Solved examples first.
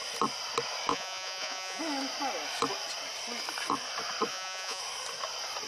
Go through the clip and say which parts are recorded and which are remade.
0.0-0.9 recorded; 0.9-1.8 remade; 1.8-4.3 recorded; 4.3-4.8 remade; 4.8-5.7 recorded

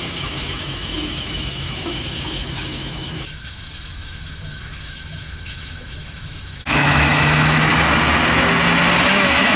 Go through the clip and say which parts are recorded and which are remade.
0.0-7.7 remade; 7.7-9.0 recorded; 9.0-9.6 remade